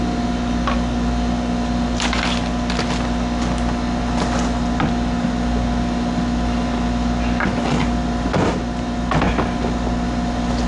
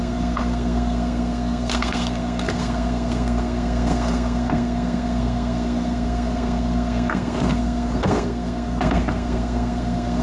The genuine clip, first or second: first